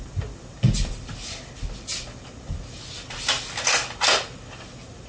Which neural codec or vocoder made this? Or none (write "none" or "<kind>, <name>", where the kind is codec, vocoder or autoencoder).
none